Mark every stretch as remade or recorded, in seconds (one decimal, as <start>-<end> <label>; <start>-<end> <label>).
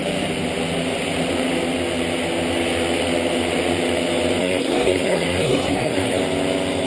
0.0-4.4 recorded; 4.4-6.2 remade; 6.2-6.9 recorded